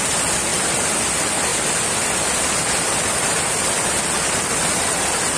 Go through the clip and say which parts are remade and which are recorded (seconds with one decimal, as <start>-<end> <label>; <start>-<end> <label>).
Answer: 0.0-5.4 recorded